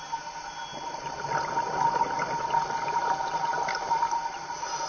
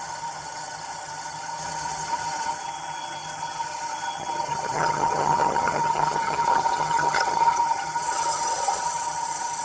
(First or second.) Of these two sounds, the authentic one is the first